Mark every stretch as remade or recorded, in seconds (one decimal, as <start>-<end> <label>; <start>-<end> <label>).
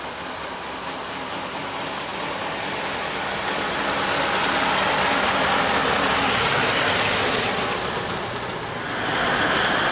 0.0-9.9 recorded